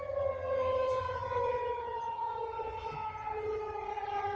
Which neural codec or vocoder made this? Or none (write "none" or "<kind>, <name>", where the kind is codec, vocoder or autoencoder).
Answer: vocoder, HiFi-GAN